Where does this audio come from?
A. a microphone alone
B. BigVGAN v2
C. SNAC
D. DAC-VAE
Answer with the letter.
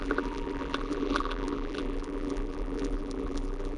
B